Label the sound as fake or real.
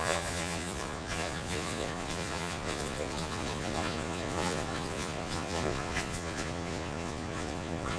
fake